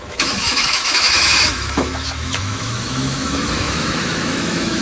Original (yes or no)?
no